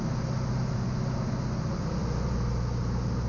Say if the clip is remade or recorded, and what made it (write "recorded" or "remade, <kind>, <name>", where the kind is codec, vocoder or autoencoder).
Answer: recorded